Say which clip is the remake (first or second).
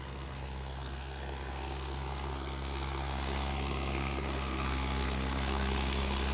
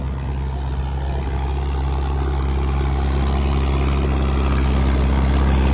first